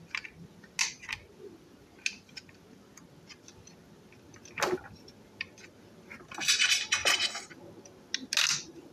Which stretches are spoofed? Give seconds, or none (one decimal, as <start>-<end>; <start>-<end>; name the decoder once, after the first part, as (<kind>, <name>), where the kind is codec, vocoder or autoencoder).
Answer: 7.0-7.5 (vocoder, BigVGAN v2)